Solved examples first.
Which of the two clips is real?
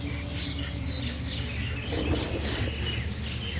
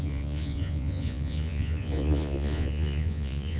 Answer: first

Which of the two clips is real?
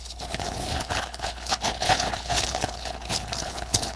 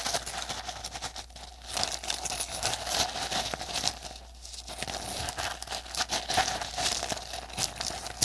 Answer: second